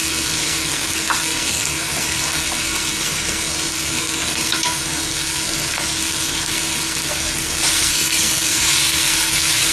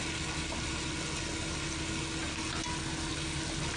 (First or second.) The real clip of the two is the second